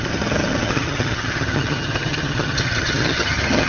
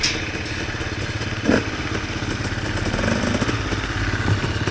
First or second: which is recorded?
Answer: second